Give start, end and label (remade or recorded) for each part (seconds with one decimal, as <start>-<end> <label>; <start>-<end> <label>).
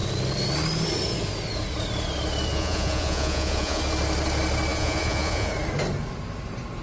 0.0-2.5 recorded; 2.5-3.8 remade; 3.8-4.7 recorded; 4.7-5.5 remade; 5.5-6.8 recorded